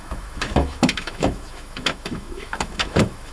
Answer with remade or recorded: remade